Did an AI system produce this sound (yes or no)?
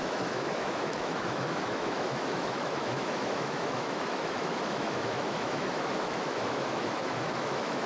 yes